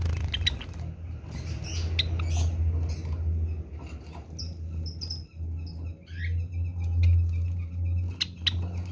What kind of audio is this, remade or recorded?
recorded